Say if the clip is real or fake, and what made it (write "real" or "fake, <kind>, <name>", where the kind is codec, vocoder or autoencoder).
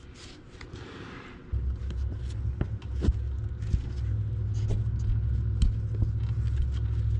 real